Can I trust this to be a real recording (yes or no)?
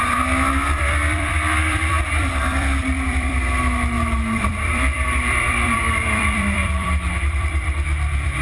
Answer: no